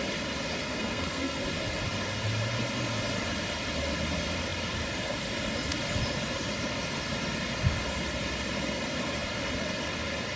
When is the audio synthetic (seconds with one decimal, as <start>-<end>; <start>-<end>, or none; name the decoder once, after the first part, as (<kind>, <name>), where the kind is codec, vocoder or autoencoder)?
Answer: 0.6-1.4 (codec, SNAC)